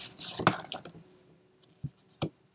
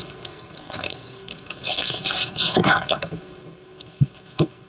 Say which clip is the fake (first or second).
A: second